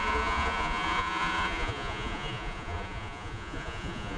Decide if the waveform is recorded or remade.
remade